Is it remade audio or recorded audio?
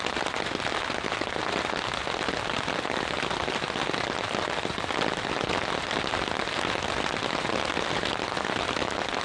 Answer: recorded